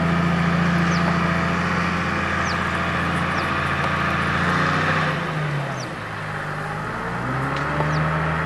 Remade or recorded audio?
recorded